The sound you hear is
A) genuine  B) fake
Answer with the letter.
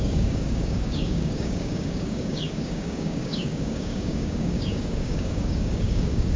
B